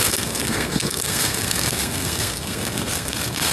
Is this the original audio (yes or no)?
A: no